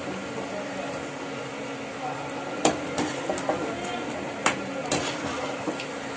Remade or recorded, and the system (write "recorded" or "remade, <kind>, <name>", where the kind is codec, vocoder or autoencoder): recorded